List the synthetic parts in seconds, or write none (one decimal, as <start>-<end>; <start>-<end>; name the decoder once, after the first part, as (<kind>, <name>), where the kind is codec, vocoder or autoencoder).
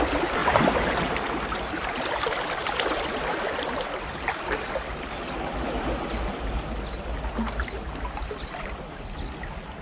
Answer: 0.4-4.4 (vocoder, BigVGAN v2)